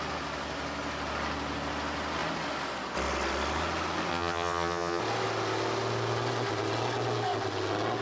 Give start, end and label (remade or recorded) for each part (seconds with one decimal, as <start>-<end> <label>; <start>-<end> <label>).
0.0-4.1 recorded; 4.1-5.0 remade; 5.0-8.0 recorded